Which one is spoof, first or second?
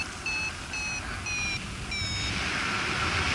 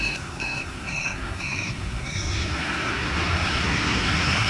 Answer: second